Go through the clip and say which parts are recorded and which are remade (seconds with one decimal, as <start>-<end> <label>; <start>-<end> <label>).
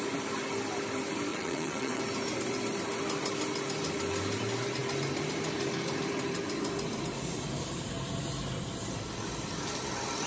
0.0-1.3 recorded; 1.3-2.0 remade; 2.0-10.3 recorded